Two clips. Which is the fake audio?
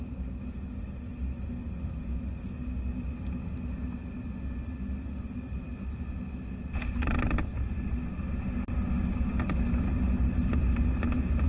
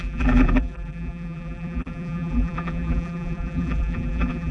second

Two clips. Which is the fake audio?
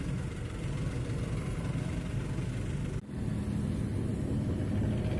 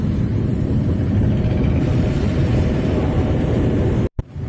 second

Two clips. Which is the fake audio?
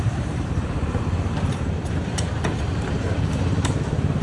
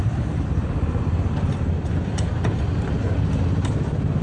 first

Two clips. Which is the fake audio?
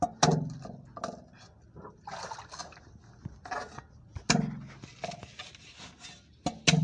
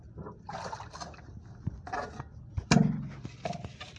second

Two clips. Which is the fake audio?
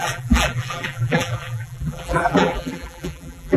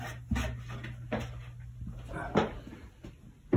first